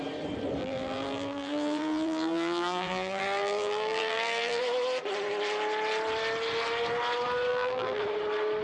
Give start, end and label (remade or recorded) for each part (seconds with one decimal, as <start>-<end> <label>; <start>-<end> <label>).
0.0-0.6 recorded; 0.6-4.6 remade; 4.6-7.5 recorded; 7.5-8.0 remade; 8.0-8.6 recorded